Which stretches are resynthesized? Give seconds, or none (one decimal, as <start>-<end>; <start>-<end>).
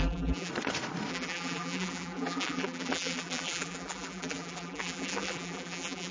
0.0-0.5; 1.1-6.1